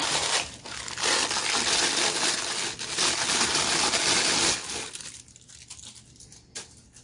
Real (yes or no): yes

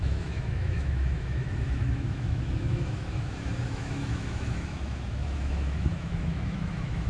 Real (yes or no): no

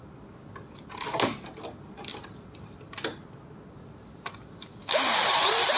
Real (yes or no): yes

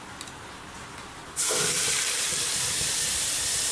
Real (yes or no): yes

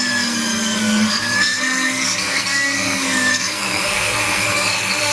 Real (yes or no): no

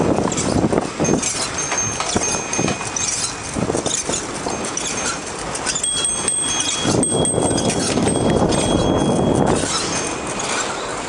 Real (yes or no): yes